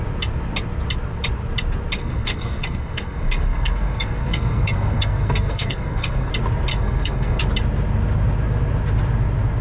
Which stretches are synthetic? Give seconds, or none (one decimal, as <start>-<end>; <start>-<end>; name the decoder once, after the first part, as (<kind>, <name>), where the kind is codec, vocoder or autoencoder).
2.0-6.3 (codec, SNAC); 6.7-7.4

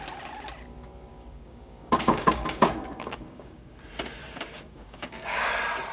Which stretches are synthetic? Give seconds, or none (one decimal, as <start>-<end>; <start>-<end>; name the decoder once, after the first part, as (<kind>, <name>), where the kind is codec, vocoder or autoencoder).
1.1-3.8 (codec, DAC); 4.2-5.5

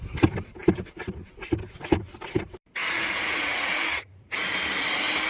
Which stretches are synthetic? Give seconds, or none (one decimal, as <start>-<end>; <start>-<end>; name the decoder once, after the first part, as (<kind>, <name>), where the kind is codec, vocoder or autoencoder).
2.8-4.3 (vocoder, Vocos)

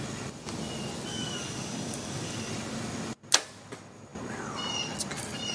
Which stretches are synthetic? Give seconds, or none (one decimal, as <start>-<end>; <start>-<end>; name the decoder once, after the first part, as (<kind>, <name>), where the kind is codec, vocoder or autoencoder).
1.1-2.5 (codec, DAC)

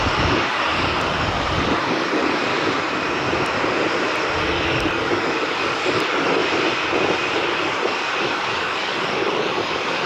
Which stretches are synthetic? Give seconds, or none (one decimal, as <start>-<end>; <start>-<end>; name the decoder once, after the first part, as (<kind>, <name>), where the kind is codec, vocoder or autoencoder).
0.0-2.5 (codec, DAC); 4.4-6.4; 7.5-10.1

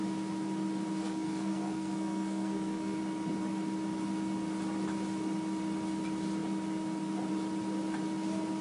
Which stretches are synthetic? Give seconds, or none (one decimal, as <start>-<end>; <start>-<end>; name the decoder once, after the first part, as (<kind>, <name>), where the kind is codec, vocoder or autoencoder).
1.0-3.0 (codec, SNAC)